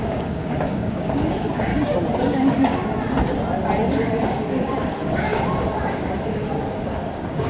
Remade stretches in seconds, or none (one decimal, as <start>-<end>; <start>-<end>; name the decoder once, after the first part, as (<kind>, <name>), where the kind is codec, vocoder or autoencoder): 0.0-1.7 (codec, DAC); 2.2-2.8; 4.4-7.5